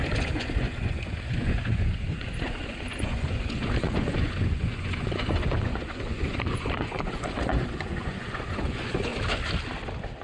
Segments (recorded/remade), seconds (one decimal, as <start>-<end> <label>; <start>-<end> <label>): 0.0-9.1 remade; 9.1-10.2 recorded